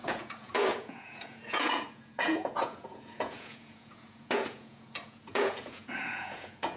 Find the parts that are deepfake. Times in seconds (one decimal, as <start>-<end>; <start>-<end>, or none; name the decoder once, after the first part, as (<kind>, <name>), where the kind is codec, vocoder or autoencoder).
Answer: 0.0-6.8 (vocoder, Vocos)